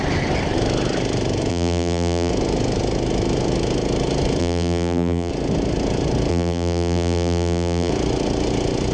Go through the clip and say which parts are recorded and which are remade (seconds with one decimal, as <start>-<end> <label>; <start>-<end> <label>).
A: 0.0-1.5 recorded; 1.5-2.3 remade; 2.3-4.4 recorded; 4.4-5.3 remade; 5.3-6.3 recorded; 6.3-7.9 remade; 7.9-8.9 recorded

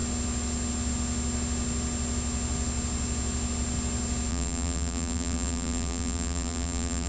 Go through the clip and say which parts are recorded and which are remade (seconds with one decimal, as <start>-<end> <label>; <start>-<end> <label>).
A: 0.0-4.3 recorded; 4.3-7.1 remade

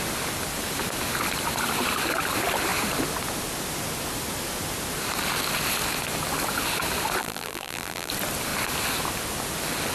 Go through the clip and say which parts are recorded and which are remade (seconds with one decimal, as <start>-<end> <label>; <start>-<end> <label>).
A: 0.0-7.2 recorded; 7.2-8.1 remade; 8.1-9.9 recorded

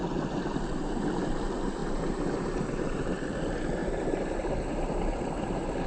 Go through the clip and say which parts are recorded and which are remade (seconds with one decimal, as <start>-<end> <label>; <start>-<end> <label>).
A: 0.0-0.6 remade; 0.6-1.8 recorded; 1.8-3.0 remade; 3.0-3.8 recorded; 3.8-5.5 remade; 5.5-5.9 recorded